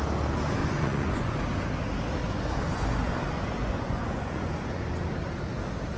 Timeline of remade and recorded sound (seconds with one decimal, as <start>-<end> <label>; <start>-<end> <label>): 0.0-0.6 recorded; 0.6-1.4 remade; 1.4-2.2 recorded; 2.2-5.0 remade; 5.0-6.0 recorded